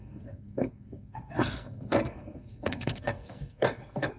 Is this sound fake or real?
fake